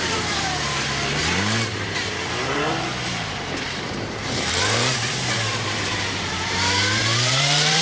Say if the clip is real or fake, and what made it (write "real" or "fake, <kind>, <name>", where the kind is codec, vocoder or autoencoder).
fake, vocoder, BigVGAN v2